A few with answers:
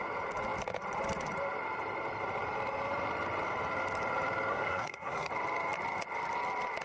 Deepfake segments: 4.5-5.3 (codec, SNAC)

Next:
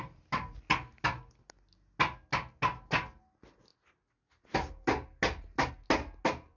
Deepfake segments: none

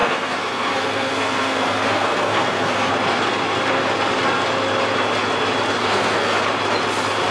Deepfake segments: 0.0-2.9 (codec, SNAC); 5.8-6.4

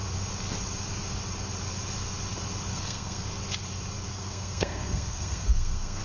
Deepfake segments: 2.7-3.2 (codec, SNAC); 4.1-6.0

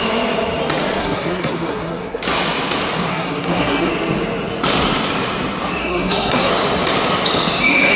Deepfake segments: 1.0-2.2 (codec, SNAC); 3.1-3.9; 5.8-6.5

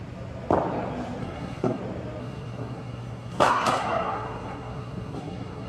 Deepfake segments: 1.2-1.8 (codec, SNAC); 2.2-5.7

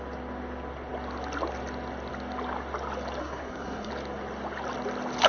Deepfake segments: 3.2-3.9 (codec, SNAC)